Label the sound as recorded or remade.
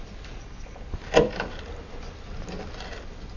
recorded